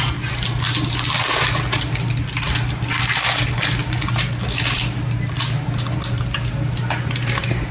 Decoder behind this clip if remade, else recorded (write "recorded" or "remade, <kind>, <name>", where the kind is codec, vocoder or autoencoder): recorded